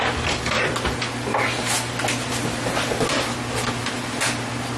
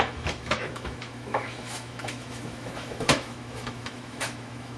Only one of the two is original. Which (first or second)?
first